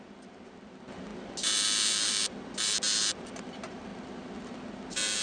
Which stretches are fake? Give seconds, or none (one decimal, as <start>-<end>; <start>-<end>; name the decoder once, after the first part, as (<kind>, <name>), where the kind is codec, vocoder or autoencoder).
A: none